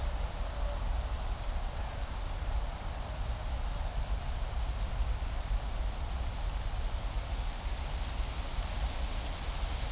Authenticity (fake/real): real